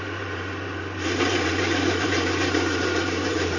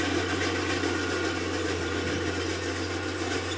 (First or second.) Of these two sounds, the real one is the second